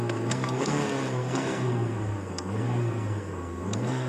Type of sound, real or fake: fake